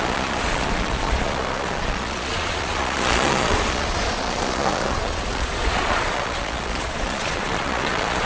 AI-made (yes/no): yes